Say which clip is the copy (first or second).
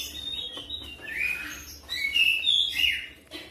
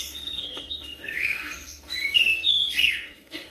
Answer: second